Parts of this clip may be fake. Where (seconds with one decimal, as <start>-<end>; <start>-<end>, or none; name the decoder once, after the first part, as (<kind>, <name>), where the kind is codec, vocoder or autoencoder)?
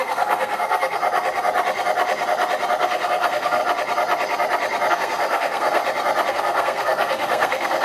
0.0-1.0 (codec, SNAC); 2.8-3.6; 4.9-5.8; 6.3-7.8